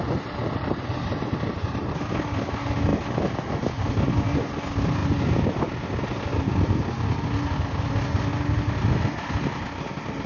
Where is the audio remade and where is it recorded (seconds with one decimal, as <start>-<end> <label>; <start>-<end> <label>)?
0.0-10.3 recorded